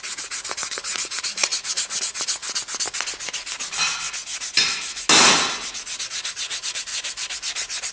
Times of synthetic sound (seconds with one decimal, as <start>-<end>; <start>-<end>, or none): 0.0-2.4; 6.0-6.9